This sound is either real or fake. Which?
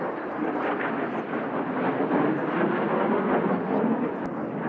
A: real